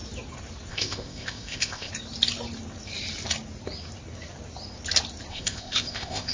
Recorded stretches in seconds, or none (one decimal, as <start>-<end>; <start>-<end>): 0.0-0.7; 1.9-5.3